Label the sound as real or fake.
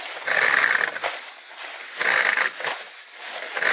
real